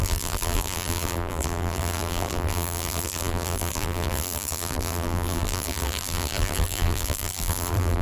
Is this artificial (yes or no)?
yes